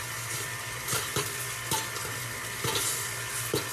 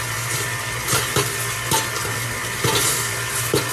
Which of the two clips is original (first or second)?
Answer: second